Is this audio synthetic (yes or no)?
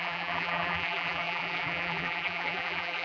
yes